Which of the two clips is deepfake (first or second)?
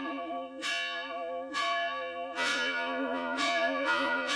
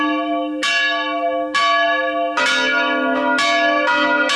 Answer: first